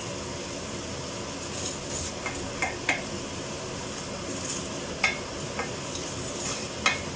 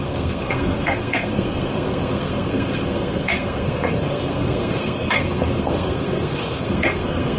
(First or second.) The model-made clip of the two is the second